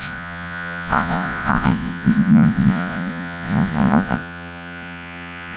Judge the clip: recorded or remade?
remade